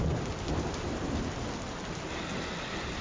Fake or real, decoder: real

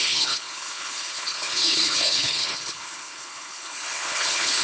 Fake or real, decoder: fake, codec, HILCodec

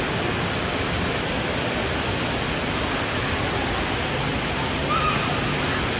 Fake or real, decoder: real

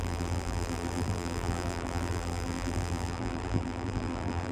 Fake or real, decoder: fake, vocoder, BigVGAN v2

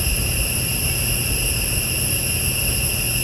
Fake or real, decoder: real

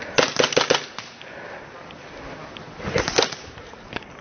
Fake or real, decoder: real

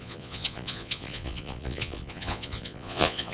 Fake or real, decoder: fake, vocoder, Vocos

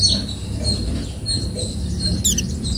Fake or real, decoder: real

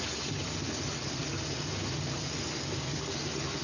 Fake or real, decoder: real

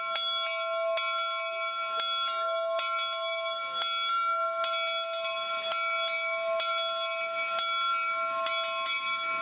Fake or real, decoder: real